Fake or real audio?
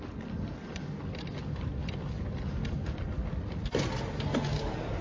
real